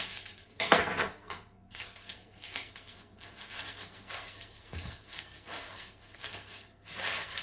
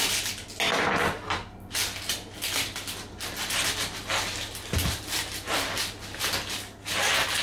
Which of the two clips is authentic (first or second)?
second